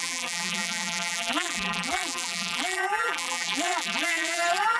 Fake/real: fake